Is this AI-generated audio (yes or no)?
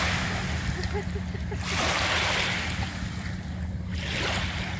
no